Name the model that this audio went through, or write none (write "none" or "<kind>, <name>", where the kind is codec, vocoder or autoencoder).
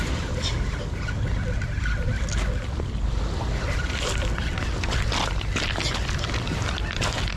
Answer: none